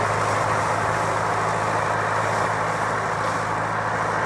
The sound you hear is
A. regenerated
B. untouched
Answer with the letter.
B